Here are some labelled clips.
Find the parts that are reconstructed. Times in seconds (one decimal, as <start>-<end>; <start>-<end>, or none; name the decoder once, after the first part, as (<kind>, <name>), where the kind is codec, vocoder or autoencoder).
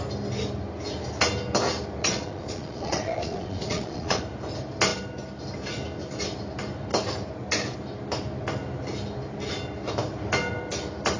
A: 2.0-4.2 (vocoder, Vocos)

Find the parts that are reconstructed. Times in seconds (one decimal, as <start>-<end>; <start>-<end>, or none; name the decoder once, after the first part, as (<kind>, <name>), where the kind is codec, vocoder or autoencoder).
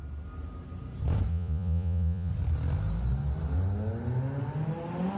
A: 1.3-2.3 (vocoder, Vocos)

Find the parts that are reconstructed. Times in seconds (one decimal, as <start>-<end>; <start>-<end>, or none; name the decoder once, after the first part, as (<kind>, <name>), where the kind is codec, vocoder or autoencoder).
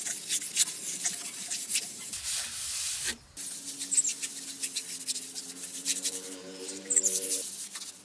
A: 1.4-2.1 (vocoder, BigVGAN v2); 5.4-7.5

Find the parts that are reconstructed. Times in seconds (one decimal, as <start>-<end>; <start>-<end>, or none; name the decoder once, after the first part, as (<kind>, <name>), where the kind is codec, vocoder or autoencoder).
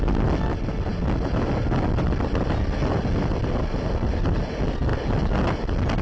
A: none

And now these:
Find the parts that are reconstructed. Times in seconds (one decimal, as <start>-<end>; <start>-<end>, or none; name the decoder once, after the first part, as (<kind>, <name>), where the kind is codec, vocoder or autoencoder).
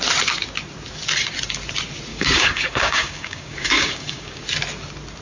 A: 2.1-4.4 (codec, DAC)